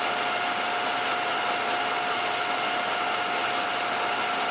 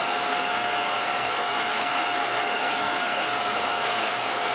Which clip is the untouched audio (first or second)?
first